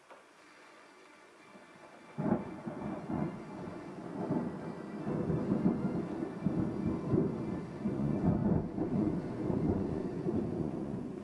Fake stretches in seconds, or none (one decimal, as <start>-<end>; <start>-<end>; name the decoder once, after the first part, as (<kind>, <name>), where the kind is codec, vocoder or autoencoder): 0.0-4.0 (vocoder, Vocos); 7.7-8.4; 8.9-11.2